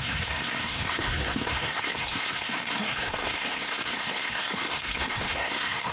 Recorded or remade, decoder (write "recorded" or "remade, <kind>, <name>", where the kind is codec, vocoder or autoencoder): remade, codec, SNAC